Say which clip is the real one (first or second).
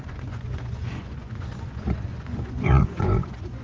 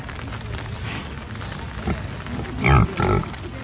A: second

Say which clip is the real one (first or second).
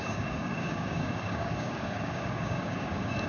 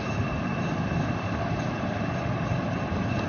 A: second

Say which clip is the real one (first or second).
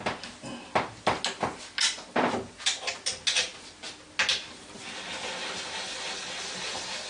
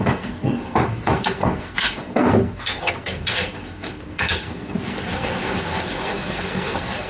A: first